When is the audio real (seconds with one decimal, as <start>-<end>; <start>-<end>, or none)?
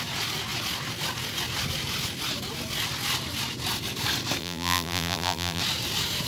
0.0-4.4; 5.6-6.3